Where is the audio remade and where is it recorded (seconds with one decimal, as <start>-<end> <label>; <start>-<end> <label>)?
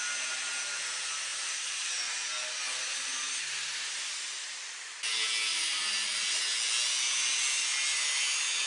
0.0-1.3 recorded; 1.3-2.0 remade; 2.0-5.5 recorded; 5.5-6.4 remade; 6.4-8.7 recorded